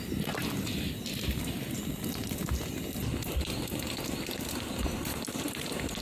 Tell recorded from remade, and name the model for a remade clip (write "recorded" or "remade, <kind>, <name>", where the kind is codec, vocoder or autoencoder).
recorded